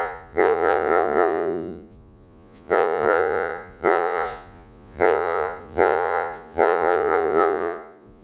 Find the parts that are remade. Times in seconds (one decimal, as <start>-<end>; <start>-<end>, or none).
0.0-8.2